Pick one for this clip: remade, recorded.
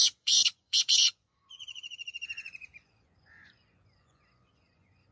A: remade